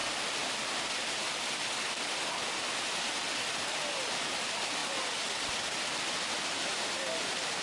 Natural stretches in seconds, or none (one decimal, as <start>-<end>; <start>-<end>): 2.2-7.6